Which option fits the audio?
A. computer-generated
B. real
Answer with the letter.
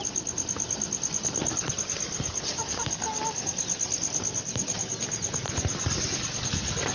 B